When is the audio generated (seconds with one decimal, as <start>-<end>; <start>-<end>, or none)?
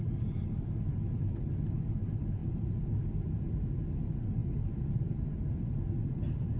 none